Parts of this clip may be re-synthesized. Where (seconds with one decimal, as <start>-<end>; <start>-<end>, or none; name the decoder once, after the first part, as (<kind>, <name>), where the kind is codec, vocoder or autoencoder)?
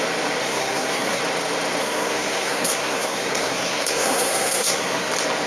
0.4-1.2 (codec, SNAC); 1.8-5.1